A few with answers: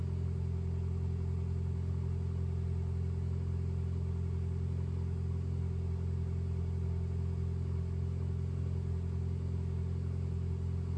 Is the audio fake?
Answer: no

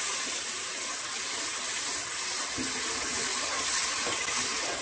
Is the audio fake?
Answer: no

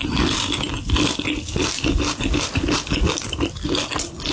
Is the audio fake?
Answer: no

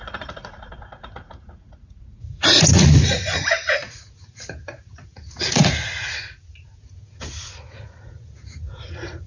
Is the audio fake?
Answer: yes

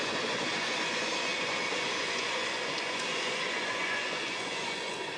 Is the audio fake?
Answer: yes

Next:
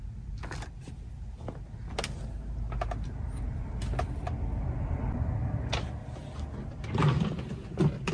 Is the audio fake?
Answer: no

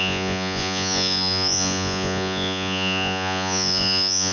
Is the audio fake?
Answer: yes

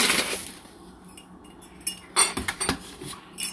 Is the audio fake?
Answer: no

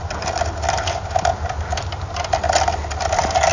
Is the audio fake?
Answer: no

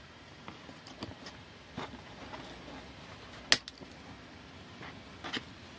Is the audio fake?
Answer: no